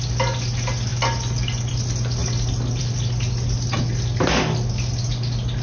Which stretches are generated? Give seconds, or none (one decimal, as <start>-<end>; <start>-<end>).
none